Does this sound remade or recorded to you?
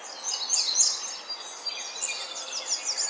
recorded